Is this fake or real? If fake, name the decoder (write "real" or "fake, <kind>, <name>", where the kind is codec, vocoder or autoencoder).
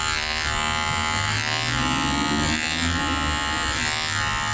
real